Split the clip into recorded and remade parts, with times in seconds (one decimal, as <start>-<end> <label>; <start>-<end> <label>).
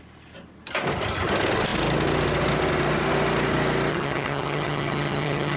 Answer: 0.0-3.9 recorded; 3.9-5.6 remade